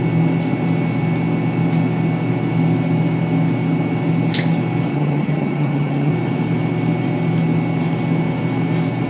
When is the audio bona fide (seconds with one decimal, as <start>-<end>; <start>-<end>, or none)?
0.0-4.9; 6.1-9.1